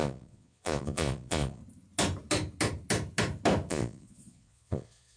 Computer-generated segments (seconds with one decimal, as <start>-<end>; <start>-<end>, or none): 0.0-1.6; 3.7-5.2